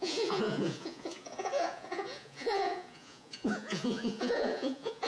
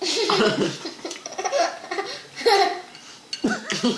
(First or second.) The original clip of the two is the second